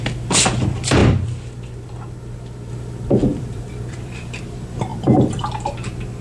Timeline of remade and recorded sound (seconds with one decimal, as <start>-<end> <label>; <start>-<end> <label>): 0.0-3.3 recorded; 3.3-4.4 remade; 4.4-4.9 recorded; 4.9-5.5 remade; 5.5-6.2 recorded

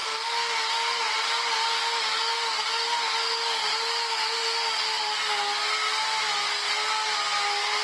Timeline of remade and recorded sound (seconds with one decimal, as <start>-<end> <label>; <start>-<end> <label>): 0.0-7.8 recorded

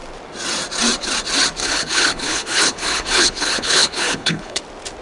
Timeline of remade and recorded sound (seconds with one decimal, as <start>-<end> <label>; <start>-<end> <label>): 0.0-1.6 recorded; 1.6-4.6 remade; 4.6-5.0 recorded